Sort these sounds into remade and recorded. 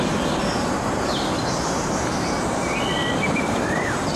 recorded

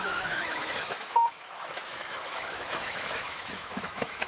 remade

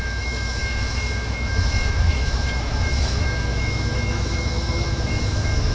remade